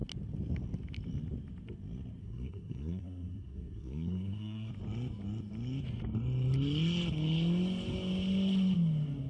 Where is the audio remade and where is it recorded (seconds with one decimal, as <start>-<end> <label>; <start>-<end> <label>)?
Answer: 0.0-2.2 recorded; 2.2-4.7 remade; 4.7-9.3 recorded